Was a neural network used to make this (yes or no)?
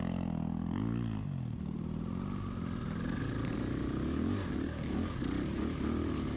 no